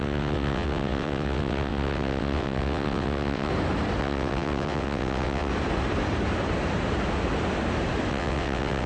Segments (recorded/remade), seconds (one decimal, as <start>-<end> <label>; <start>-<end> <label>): 0.0-3.5 remade; 3.5-4.0 recorded; 4.0-5.5 remade; 5.5-8.1 recorded; 8.1-8.9 remade